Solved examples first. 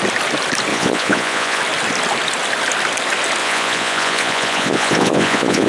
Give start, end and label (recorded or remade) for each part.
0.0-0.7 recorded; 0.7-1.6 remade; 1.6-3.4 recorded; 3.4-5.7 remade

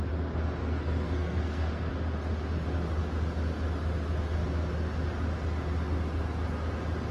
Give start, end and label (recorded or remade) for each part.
0.0-0.6 recorded; 0.6-1.9 remade; 1.9-7.1 recorded

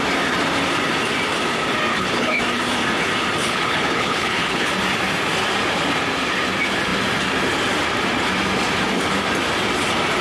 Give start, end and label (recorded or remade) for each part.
0.0-1.9 recorded; 1.9-2.4 remade; 2.4-3.4 recorded; 3.4-4.7 remade; 4.7-10.2 recorded

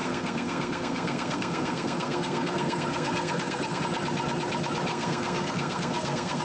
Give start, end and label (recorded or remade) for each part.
0.0-3.8 remade; 3.8-4.9 recorded; 4.9-6.4 remade

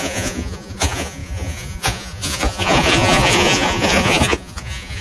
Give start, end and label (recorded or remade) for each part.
0.0-5.0 remade

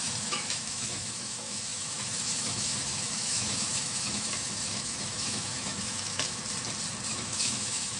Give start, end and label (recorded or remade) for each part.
0.0-6.4 remade; 6.4-7.1 recorded; 7.1-8.0 remade

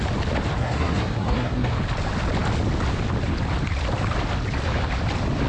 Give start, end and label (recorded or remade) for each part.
0.0-0.6 recorded; 0.6-1.7 remade; 1.7-5.5 recorded

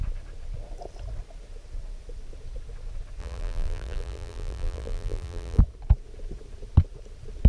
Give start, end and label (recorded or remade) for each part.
0.0-3.2 recorded; 3.2-5.6 remade; 5.6-7.5 recorded